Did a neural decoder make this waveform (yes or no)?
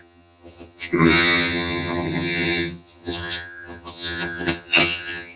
yes